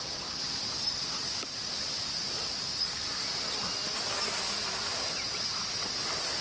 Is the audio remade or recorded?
recorded